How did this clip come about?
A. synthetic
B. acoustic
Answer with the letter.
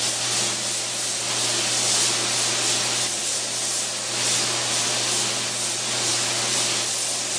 B